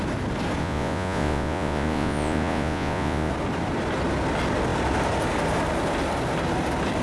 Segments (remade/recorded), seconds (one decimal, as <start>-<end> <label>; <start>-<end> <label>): 0.0-0.6 recorded; 0.6-3.3 remade; 3.3-7.0 recorded

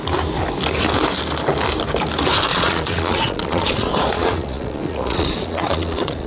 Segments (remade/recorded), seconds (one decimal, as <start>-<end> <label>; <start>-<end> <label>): 0.0-2.5 recorded; 2.5-6.3 remade

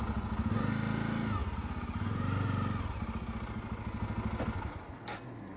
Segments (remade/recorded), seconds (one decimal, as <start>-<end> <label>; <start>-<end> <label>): 0.0-5.6 recorded

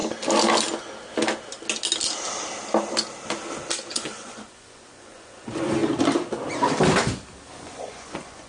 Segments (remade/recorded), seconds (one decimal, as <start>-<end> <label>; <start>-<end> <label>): 0.0-3.9 recorded; 3.9-5.8 remade; 5.8-7.5 recorded; 7.5-8.5 remade

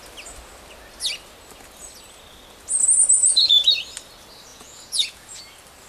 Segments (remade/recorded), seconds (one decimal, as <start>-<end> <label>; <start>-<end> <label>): 0.0-3.2 recorded; 3.2-3.7 remade; 3.7-4.5 recorded; 4.5-5.4 remade; 5.4-5.9 recorded

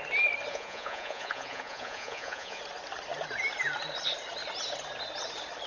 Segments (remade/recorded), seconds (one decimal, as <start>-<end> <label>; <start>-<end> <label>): 0.0-0.5 recorded; 0.5-2.6 remade; 2.6-5.7 recorded